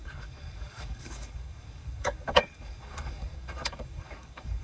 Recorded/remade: remade